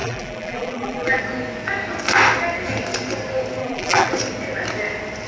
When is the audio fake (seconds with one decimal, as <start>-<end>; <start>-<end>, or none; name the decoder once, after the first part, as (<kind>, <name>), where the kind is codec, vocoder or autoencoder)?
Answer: 0.0-1.2 (vocoder, BigVGAN v2); 3.6-4.1